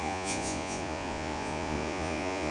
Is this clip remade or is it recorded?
remade